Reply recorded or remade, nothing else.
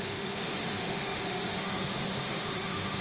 remade